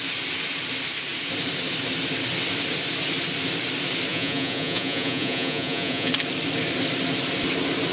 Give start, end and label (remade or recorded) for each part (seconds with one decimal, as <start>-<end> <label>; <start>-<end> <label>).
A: 0.0-4.1 recorded; 4.1-6.1 remade; 6.1-7.9 recorded